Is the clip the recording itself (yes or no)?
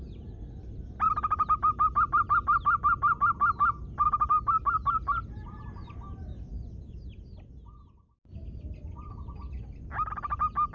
yes